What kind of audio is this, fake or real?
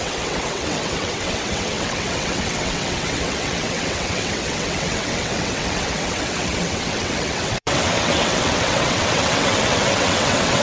fake